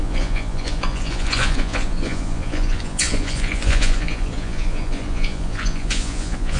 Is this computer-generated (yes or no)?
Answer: yes